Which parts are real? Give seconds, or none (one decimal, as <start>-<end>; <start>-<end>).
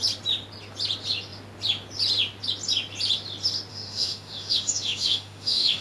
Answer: 0.0-3.7